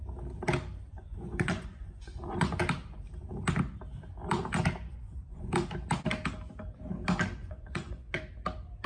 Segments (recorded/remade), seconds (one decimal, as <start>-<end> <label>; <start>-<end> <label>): 0.0-0.9 recorded; 0.9-2.6 remade; 2.6-4.9 recorded; 4.9-5.5 remade; 5.5-7.4 recorded; 7.4-8.2 remade; 8.2-8.9 recorded

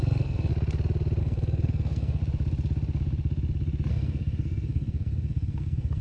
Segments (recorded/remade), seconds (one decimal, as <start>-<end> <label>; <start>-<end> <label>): 0.0-0.5 remade; 0.5-1.2 recorded; 1.2-2.2 remade; 2.2-3.9 recorded; 3.9-6.0 remade

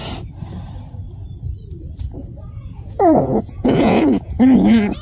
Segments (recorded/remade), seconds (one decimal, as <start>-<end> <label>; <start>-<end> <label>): 0.0-1.9 recorded; 1.9-5.0 remade

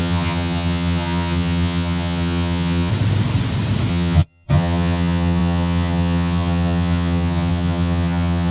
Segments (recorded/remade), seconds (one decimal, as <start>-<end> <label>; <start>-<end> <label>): 0.0-2.9 remade; 2.9-3.9 recorded; 3.9-8.5 remade

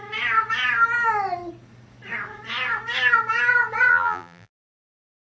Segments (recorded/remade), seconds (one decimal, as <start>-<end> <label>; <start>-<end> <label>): 0.0-3.9 recorded; 3.9-4.5 remade; 4.5-5.2 recorded

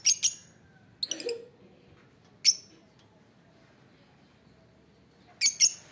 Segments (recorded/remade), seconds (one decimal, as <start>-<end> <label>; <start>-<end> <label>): 0.0-5.9 recorded

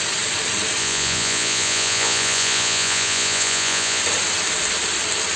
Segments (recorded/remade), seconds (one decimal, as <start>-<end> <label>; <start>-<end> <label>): 0.0-0.8 recorded; 0.8-4.0 remade; 4.0-5.4 recorded